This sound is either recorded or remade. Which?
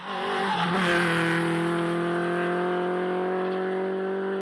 recorded